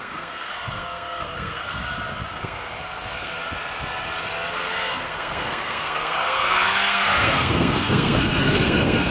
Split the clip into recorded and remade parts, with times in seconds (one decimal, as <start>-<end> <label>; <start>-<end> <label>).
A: 0.0-1.8 remade; 1.8-2.3 recorded; 2.3-3.3 remade; 3.3-4.5 recorded; 4.5-9.1 remade